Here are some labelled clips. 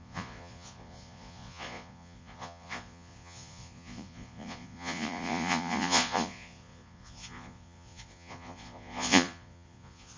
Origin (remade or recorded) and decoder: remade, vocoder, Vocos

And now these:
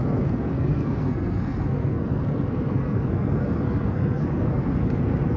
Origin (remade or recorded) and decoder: remade, codec, SNAC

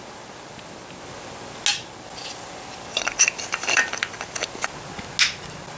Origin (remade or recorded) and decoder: recorded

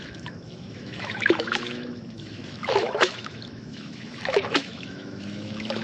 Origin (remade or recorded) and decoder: remade, autoencoder, DAC-VAE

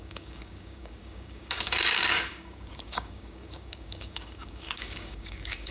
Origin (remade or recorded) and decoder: remade, codec, DAC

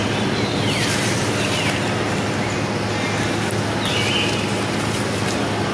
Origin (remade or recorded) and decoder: recorded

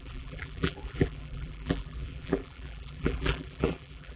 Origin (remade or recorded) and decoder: remade, vocoder, BigVGAN v2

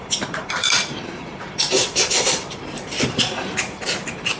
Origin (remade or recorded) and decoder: remade, vocoder, BigVGAN v2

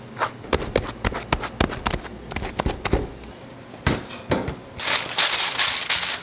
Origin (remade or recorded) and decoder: recorded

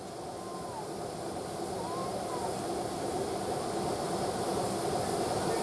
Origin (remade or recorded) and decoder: recorded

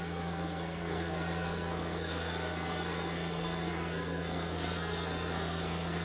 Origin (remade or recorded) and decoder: remade, codec, SNAC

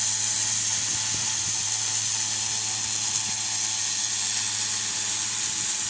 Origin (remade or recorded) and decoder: recorded